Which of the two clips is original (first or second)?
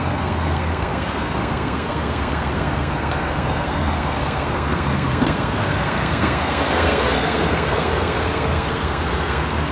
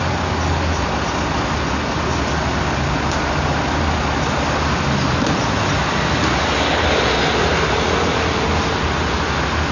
second